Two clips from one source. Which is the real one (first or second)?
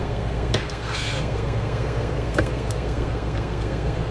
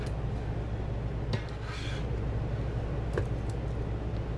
second